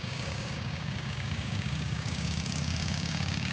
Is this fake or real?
fake